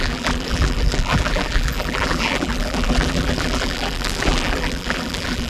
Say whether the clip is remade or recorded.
remade